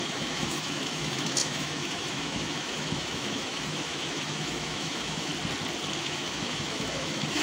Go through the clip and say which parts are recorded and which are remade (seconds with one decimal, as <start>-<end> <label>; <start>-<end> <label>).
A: 0.0-5.3 remade; 5.3-6.0 recorded; 6.0-7.4 remade